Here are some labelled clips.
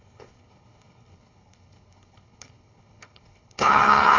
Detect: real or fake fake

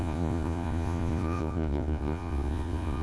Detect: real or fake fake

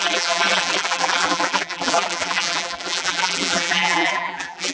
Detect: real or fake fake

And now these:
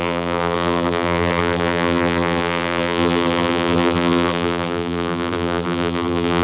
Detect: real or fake fake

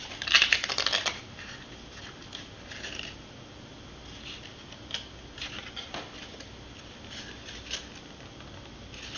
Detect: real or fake real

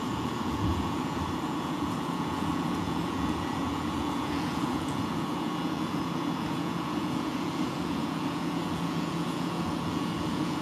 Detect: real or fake fake